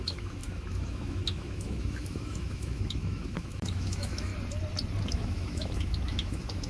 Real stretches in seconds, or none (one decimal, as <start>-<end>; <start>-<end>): 4.3-5.1